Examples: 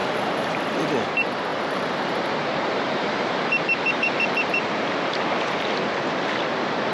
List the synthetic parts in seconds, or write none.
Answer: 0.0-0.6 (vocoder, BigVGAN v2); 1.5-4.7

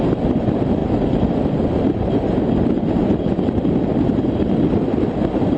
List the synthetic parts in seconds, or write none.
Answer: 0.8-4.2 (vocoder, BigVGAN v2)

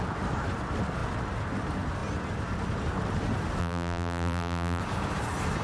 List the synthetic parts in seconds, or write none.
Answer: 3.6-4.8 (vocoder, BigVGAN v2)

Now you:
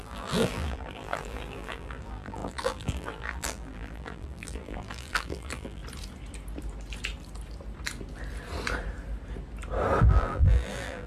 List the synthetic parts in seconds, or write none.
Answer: 0.0-5.8 (vocoder, BigVGAN v2); 10.0-11.1

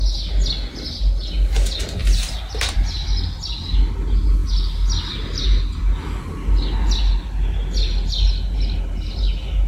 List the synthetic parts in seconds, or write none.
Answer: 2.0-2.8 (vocoder, BigVGAN v2)